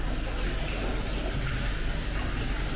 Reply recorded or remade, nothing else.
recorded